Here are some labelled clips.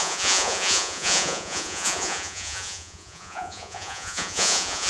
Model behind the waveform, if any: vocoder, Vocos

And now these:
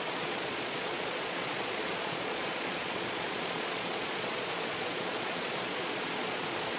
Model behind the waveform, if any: vocoder, Vocos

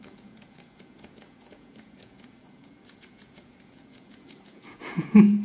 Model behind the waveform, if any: vocoder, Vocos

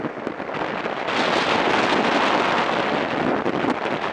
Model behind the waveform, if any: none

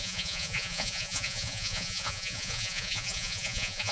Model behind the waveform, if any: vocoder, Vocos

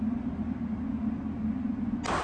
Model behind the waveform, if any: none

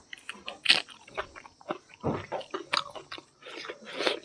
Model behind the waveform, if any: none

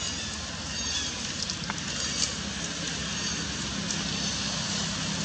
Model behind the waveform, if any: none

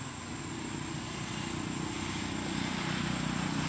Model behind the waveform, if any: none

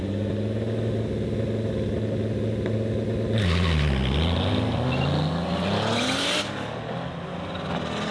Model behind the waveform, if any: none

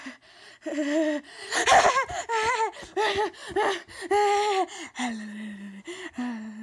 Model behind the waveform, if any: none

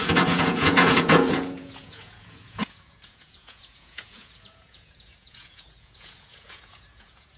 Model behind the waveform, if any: vocoder, Vocos